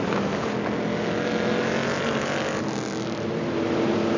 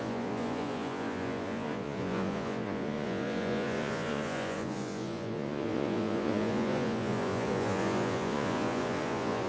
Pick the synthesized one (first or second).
second